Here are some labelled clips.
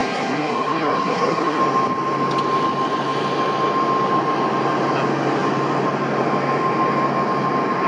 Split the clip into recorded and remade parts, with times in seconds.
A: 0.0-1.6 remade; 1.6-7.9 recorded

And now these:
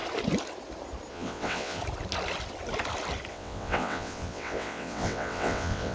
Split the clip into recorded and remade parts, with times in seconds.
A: 0.0-1.1 recorded; 1.1-1.8 remade; 1.8-3.3 recorded; 3.3-5.9 remade

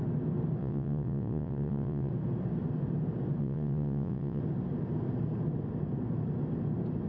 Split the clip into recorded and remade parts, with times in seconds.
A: 0.0-0.6 recorded; 0.6-2.1 remade; 2.1-3.4 recorded; 3.4-4.4 remade; 4.4-7.1 recorded

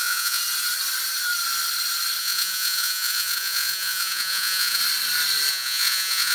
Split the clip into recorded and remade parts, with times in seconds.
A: 0.0-0.4 remade; 0.4-2.2 recorded; 2.2-4.8 remade; 4.8-5.5 recorded; 5.5-6.3 remade

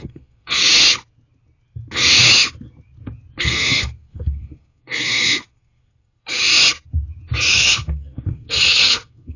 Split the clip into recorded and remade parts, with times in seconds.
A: 0.0-0.6 remade; 0.6-3.4 recorded; 3.4-6.4 remade; 6.4-7.5 recorded; 7.5-9.4 remade